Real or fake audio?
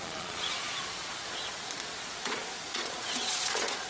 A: fake